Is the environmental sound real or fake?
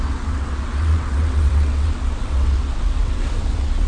fake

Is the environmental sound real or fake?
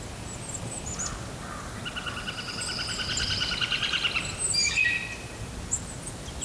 real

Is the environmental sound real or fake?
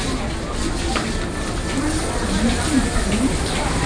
real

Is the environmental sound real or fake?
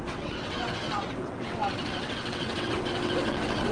fake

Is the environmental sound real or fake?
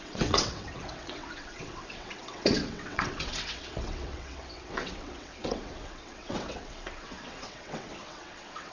fake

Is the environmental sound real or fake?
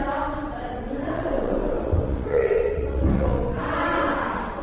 fake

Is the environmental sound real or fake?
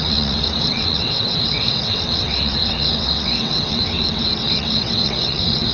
fake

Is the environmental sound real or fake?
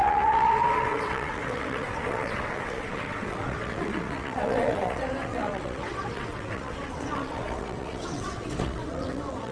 fake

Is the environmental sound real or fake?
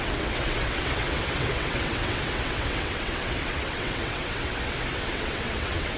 fake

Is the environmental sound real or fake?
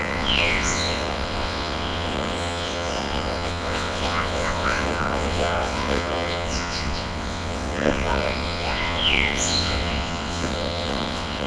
fake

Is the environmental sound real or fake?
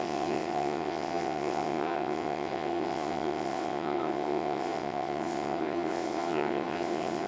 fake